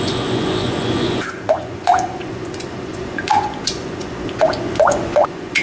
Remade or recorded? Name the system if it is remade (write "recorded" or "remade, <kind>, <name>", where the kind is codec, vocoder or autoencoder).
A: remade, vocoder, Vocos